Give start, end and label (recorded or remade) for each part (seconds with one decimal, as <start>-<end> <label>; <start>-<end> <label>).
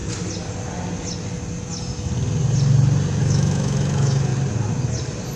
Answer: 0.0-3.2 recorded; 3.2-4.3 remade; 4.3-5.4 recorded